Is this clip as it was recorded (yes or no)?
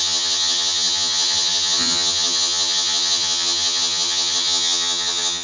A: no